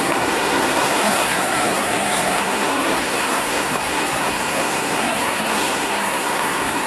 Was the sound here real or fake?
fake